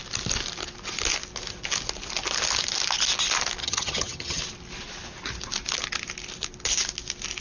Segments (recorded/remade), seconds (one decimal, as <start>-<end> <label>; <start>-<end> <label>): 0.0-3.6 recorded; 3.6-4.4 remade; 4.4-7.4 recorded